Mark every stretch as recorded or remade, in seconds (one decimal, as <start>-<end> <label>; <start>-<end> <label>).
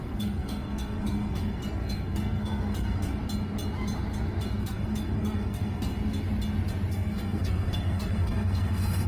0.0-3.1 remade; 3.1-4.6 recorded; 4.6-5.9 remade; 5.9-6.9 recorded; 6.9-9.1 remade